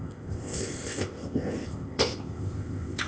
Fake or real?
fake